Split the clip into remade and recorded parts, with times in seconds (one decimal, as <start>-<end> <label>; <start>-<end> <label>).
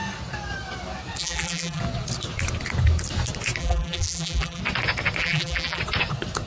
0.0-1.2 recorded; 1.2-1.8 remade; 1.8-3.6 recorded; 3.6-4.6 remade; 4.6-5.2 recorded; 5.2-5.8 remade; 5.8-6.5 recorded